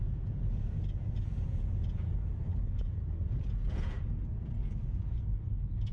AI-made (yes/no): yes